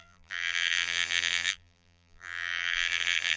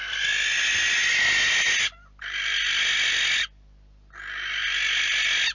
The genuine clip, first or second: second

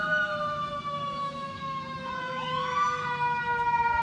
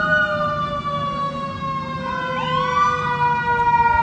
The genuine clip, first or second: second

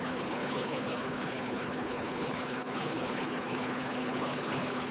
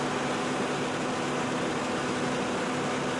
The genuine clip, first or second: second